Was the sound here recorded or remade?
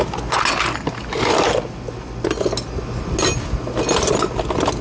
recorded